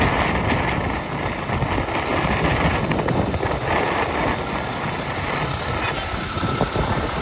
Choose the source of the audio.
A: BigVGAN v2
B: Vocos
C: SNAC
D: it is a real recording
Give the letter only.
D